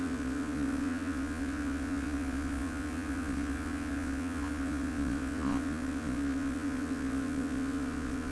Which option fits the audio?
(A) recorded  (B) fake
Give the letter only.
B